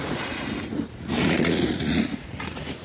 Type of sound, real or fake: fake